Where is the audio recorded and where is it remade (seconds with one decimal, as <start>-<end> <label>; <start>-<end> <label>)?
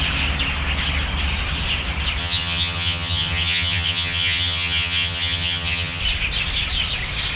0.0-2.2 recorded; 2.2-6.0 remade; 6.0-7.4 recorded